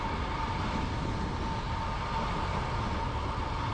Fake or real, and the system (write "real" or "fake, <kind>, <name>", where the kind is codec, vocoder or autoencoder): real